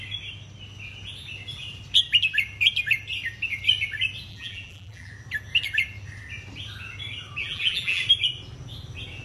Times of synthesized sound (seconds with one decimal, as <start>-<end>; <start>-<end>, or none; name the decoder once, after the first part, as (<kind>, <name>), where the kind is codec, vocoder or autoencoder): 4.3-5.1 (vocoder, BigVGAN v2); 7.4-8.0